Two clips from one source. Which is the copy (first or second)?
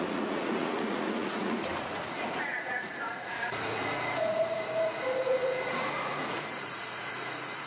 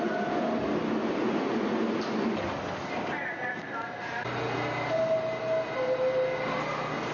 first